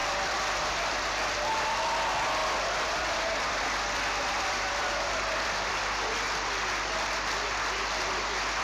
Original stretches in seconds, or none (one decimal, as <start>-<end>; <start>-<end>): 1.6-2.4; 5.8-8.6